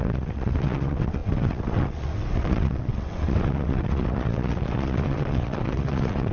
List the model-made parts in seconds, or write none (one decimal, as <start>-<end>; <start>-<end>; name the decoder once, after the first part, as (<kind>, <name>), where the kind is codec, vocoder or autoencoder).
0.0-6.3 (vocoder, WaveNeXt)